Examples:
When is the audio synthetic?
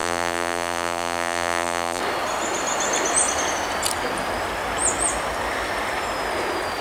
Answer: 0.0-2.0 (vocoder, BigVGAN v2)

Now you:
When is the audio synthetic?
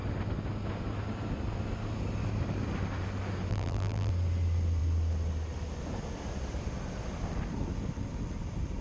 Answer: 3.5-4.1 (vocoder, BigVGAN v2)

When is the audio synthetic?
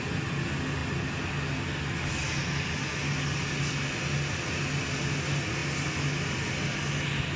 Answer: none